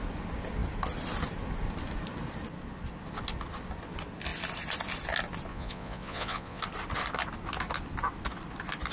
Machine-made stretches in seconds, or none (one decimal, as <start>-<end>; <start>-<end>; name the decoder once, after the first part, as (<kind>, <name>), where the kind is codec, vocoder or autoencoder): 5.5-6.6 (vocoder, Vocos)